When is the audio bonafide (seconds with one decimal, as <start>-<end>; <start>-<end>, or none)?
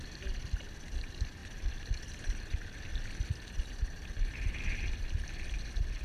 0.0-6.0